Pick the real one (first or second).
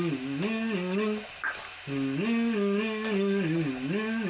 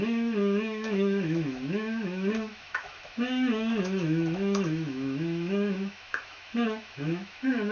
first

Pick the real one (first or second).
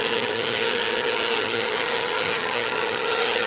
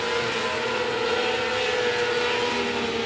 second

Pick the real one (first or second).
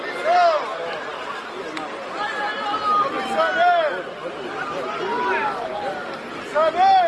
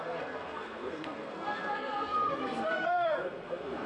first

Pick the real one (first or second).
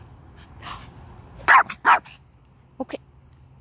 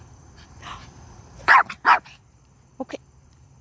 first